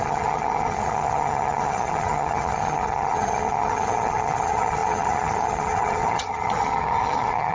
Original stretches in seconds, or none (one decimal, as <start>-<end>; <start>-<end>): none